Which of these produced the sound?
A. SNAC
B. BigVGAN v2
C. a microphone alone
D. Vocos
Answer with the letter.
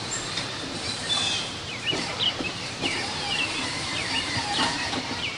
B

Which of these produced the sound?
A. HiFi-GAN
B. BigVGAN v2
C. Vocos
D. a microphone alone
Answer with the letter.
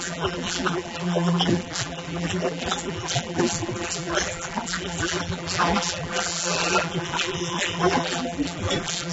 B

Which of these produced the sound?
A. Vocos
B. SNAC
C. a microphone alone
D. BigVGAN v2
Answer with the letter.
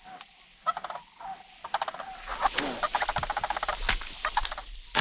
C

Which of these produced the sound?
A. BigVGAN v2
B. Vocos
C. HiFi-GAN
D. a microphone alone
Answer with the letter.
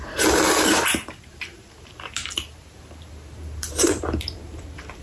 A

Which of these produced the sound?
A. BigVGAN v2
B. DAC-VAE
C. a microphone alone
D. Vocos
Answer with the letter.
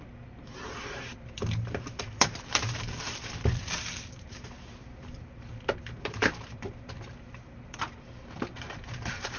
A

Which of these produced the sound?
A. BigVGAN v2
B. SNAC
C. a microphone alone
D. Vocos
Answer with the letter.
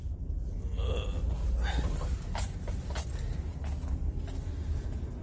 C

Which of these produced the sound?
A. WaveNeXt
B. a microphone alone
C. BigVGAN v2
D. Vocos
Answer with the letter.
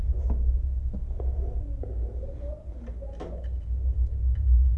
B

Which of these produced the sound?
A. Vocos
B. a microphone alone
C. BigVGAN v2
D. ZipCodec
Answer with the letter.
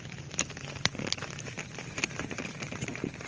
C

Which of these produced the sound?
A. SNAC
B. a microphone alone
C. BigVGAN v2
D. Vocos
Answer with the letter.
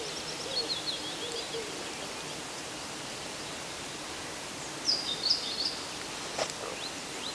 B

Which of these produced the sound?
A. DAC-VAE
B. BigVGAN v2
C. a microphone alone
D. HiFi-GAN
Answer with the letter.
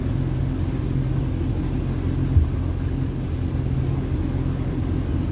C